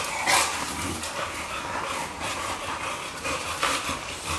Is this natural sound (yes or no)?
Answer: yes